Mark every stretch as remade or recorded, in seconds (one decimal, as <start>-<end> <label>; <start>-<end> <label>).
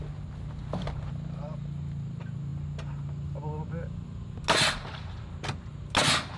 0.0-6.4 recorded